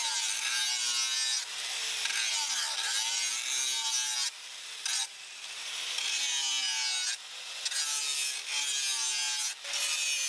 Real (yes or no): yes